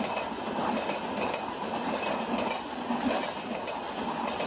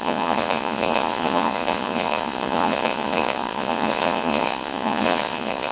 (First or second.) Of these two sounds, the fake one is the second